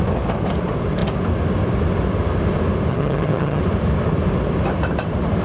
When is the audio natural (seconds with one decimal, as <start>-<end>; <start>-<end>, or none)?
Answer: 0.0-2.9; 3.6-5.4